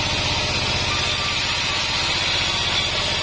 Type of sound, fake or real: real